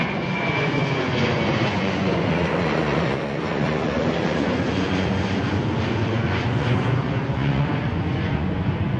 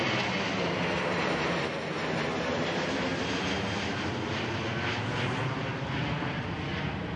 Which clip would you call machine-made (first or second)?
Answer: first